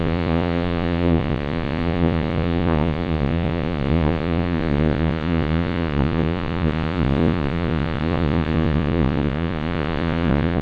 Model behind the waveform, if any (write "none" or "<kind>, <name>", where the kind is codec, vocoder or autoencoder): vocoder, Vocos